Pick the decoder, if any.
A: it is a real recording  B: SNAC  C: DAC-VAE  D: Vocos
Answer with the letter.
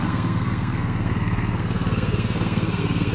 B